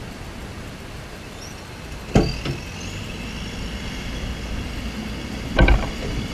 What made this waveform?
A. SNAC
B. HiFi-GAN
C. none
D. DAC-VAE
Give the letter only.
C